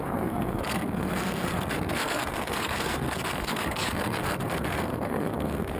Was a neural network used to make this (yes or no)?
yes